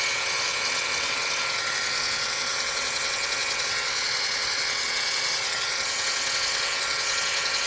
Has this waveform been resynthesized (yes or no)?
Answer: yes